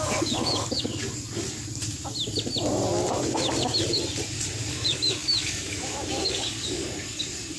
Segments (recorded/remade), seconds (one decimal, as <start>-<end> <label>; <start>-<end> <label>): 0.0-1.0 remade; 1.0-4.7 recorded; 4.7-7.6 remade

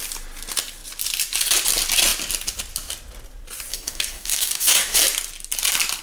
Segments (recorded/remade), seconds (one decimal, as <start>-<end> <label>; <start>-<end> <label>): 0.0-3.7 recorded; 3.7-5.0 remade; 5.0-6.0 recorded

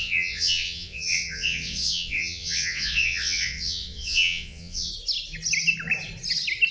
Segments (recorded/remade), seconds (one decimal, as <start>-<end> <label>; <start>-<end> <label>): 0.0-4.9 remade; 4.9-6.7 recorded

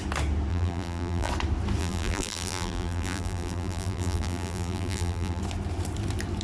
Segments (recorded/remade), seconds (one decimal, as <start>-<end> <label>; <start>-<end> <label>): 0.0-0.5 recorded; 0.5-1.3 remade; 1.3-1.8 recorded; 1.8-5.4 remade; 5.4-6.4 recorded

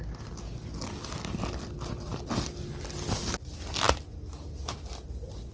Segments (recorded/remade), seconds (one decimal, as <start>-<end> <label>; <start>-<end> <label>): 0.0-5.5 recorded

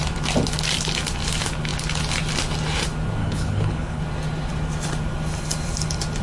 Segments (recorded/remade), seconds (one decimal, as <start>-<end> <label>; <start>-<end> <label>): 0.0-3.2 recorded; 3.2-4.0 remade; 4.0-6.2 recorded